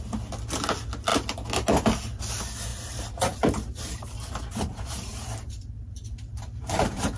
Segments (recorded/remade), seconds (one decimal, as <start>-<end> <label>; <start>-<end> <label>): 0.0-2.7 recorded; 2.7-7.2 remade